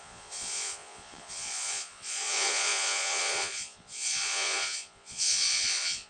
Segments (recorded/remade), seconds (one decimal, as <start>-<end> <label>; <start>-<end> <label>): 0.0-6.1 remade